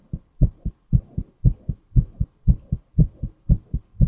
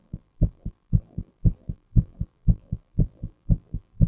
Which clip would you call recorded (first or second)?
first